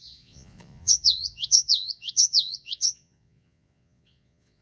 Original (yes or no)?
no